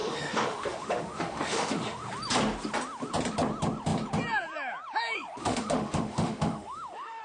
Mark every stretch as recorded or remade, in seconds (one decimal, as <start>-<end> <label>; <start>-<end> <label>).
0.0-2.1 remade; 2.1-5.4 recorded; 5.4-7.2 remade